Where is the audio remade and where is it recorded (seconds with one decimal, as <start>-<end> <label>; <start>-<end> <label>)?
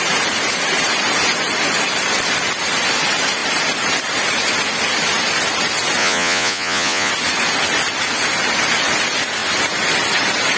0.0-6.0 recorded; 6.0-7.1 remade; 7.1-10.6 recorded